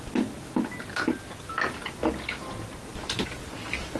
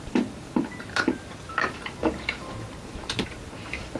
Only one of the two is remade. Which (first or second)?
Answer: second